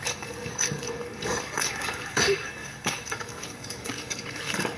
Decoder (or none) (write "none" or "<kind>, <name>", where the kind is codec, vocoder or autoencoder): codec, DAC